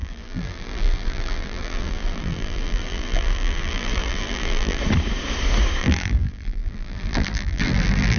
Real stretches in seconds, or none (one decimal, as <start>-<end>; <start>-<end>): 4.8-5.8